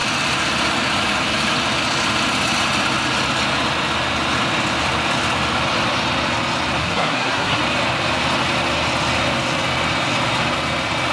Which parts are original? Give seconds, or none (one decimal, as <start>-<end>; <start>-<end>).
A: 0.0-6.8; 7.6-11.1